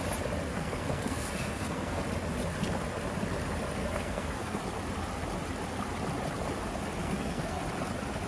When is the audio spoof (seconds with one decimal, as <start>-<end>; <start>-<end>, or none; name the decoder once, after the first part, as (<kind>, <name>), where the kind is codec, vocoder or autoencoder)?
0.5-2.0 (codec, SNAC); 3.8-4.6; 7.0-7.6

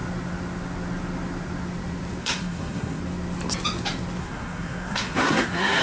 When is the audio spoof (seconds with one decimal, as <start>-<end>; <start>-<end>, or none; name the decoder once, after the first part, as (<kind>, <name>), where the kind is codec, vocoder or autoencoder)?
2.2-3.0 (codec, SNAC); 4.2-5.8